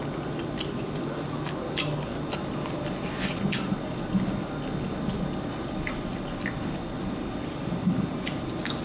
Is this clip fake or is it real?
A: real